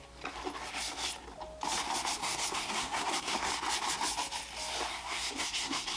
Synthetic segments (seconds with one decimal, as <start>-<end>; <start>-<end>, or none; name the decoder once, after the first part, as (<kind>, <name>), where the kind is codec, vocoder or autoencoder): 2.2-3.5 (codec, SNAC); 4.9-6.0